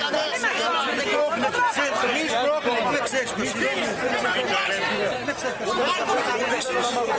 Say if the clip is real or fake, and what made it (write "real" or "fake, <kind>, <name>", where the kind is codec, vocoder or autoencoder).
real